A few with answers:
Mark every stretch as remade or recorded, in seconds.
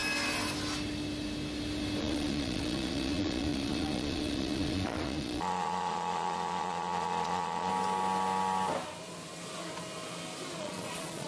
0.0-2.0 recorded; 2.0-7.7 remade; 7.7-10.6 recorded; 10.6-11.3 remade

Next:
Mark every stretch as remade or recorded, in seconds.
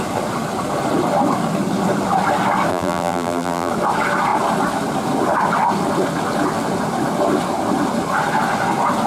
0.0-2.7 recorded; 2.7-3.7 remade; 3.7-9.1 recorded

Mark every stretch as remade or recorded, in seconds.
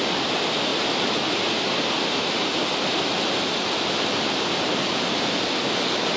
0.0-6.2 recorded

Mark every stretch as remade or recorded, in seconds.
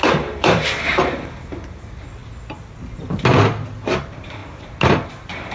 0.0-2.2 remade; 2.2-4.0 recorded; 4.0-5.5 remade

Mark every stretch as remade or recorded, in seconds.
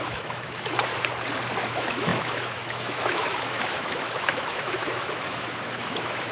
0.0-0.9 remade; 0.9-1.7 recorded; 1.7-6.3 remade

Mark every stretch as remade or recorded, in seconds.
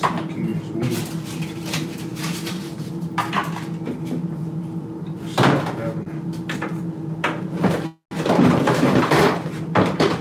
0.0-0.5 remade; 0.5-1.5 recorded; 1.5-3.4 remade; 3.4-8.4 recorded; 8.4-10.2 remade